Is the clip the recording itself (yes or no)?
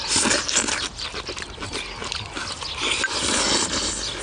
yes